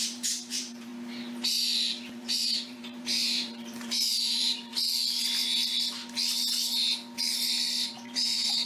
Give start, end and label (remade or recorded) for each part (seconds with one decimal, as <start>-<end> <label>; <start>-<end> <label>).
0.0-0.9 remade; 0.9-1.5 recorded; 1.5-4.7 remade; 4.7-7.9 recorded; 7.9-8.7 remade